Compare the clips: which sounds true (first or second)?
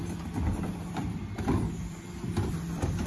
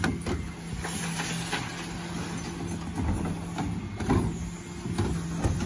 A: second